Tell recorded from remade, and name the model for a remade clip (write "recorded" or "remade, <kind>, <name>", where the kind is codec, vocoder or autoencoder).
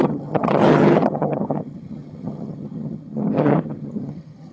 remade, vocoder, HiFi-GAN